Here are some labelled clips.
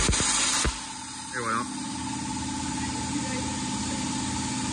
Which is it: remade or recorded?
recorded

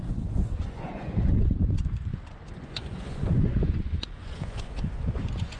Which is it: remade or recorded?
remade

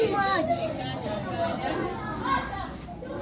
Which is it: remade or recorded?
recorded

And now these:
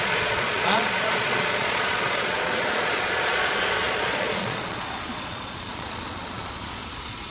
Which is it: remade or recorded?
remade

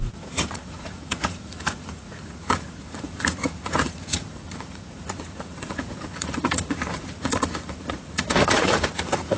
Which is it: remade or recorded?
remade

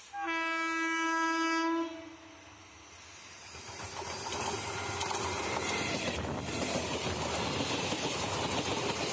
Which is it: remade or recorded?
recorded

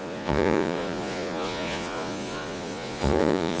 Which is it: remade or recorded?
remade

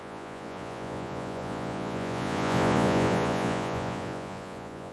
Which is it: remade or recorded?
remade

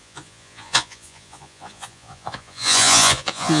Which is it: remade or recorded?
remade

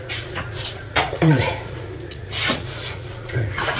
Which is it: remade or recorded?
remade